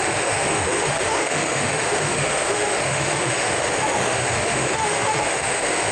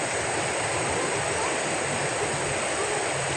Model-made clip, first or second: first